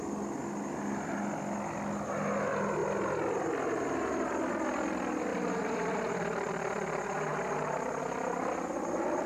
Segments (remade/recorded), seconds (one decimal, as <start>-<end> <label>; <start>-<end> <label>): 0.0-5.3 recorded; 5.3-6.5 remade; 6.5-9.3 recorded